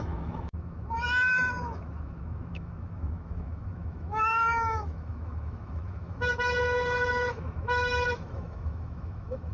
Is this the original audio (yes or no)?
no